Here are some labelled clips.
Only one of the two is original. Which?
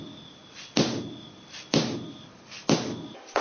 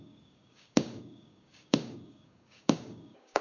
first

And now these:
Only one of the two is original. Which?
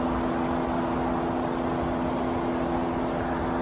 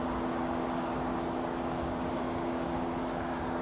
first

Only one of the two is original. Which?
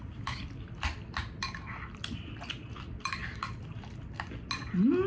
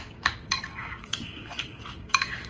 first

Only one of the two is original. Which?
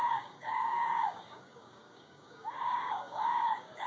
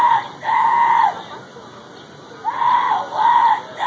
second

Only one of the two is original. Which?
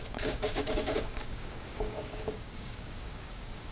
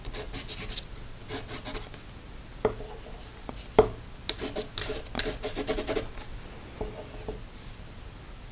second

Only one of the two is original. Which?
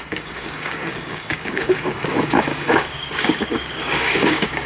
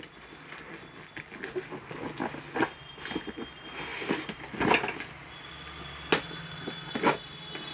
second